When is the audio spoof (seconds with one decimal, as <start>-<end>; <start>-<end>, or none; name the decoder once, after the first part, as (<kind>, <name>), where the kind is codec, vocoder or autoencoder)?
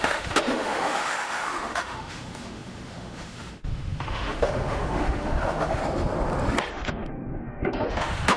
0.0-5.8 (autoencoder, DAC-VAE); 6.7-8.4